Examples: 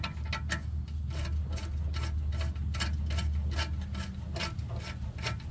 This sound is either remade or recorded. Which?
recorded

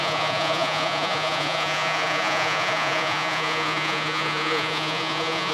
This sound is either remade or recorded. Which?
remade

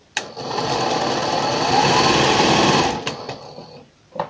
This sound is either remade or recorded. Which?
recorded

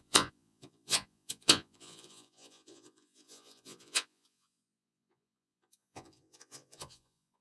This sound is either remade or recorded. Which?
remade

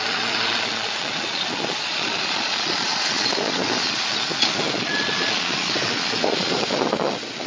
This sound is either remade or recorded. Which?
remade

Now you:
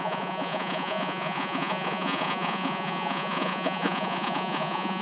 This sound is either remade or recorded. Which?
remade